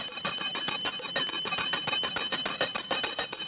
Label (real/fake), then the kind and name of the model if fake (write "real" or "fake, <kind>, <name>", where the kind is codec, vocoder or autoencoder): real